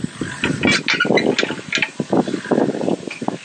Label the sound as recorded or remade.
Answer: recorded